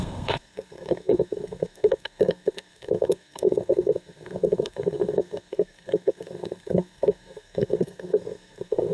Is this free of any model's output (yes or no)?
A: no